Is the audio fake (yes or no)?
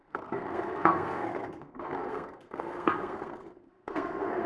yes